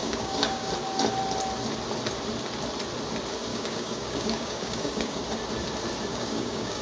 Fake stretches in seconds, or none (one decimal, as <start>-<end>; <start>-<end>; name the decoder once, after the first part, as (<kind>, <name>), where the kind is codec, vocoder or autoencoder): 0.0-0.7 (codec, DAC); 3.5-5.2; 6.1-6.8